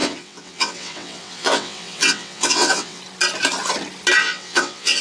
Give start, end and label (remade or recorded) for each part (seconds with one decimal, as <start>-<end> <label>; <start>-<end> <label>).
0.0-3.0 remade; 3.0-4.2 recorded; 4.2-5.0 remade